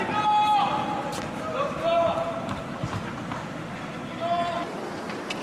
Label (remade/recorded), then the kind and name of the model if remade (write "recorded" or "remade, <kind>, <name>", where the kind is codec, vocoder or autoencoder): recorded